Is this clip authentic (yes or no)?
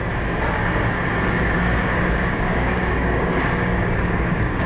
no